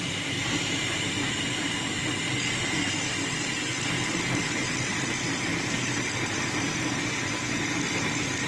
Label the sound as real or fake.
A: real